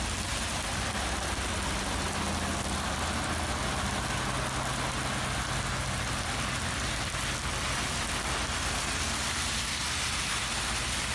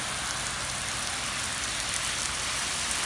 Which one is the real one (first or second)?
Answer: first